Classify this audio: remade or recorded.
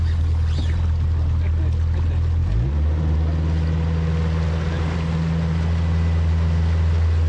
recorded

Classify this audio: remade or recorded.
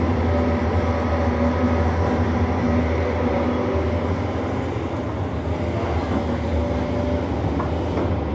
recorded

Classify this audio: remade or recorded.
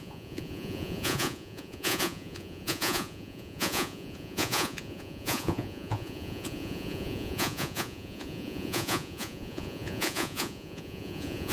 remade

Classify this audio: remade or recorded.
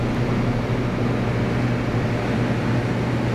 recorded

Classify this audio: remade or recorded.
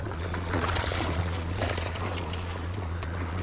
remade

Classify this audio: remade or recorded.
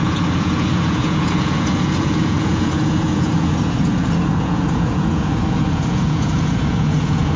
remade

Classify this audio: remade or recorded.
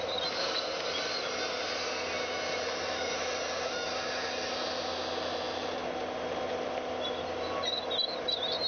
recorded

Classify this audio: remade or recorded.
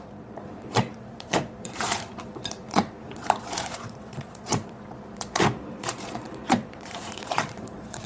remade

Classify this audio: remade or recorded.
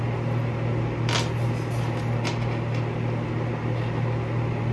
recorded